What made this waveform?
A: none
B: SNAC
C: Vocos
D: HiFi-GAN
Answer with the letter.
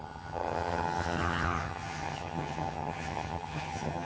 D